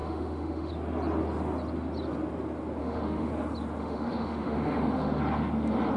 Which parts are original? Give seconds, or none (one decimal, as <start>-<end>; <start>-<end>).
0.7-2.8; 3.3-3.8; 5.2-6.0